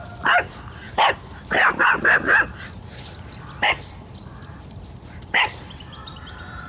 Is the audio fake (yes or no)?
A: no